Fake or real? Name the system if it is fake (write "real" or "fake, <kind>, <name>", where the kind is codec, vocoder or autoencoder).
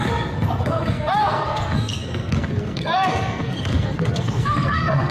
fake, codec, SNAC